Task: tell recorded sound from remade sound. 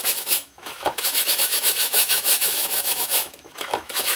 remade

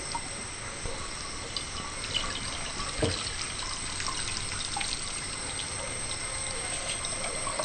recorded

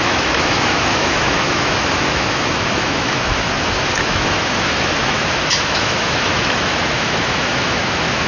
remade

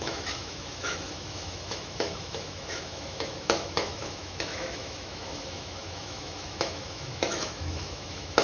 remade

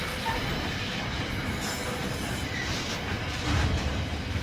recorded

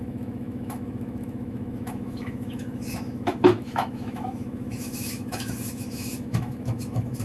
remade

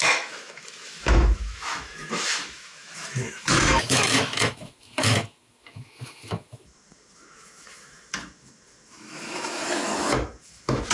remade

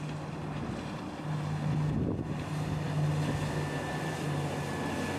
recorded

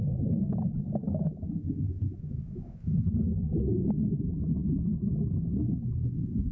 remade